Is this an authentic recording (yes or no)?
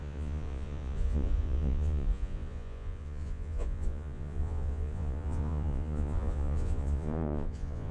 no